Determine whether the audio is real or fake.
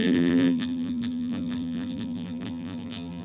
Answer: fake